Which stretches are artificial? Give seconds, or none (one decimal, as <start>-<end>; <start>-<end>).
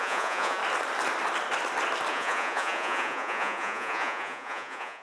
0.0-0.6; 2.1-5.0